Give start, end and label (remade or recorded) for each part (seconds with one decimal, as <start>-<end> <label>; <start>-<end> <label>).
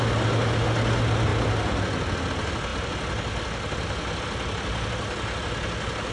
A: 0.0-6.1 recorded